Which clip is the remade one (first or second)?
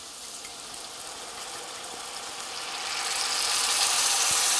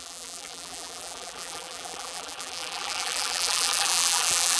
second